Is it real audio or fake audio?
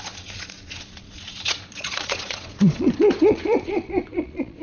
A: fake